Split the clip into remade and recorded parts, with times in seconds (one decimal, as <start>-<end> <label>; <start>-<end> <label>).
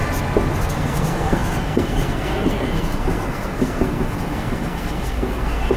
0.0-0.6 recorded; 0.6-5.8 remade